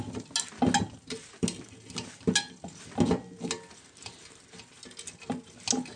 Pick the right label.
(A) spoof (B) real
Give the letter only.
B